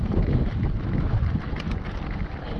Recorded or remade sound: recorded